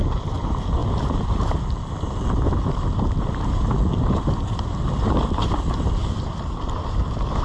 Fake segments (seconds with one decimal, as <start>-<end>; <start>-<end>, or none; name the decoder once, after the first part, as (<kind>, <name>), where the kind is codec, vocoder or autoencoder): 0.0-0.8 (vocoder, BigVGAN v2); 4.0-6.0; 6.6-7.4